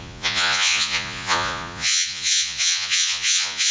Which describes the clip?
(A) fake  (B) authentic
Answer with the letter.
A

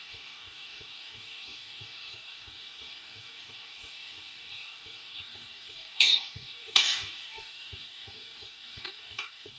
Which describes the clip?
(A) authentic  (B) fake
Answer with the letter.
B